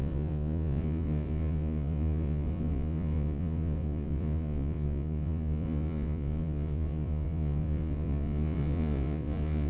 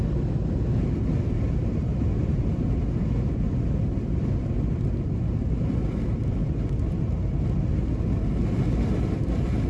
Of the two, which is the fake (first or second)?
first